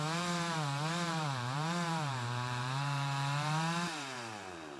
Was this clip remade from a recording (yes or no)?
yes